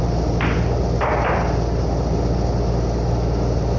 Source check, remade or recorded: recorded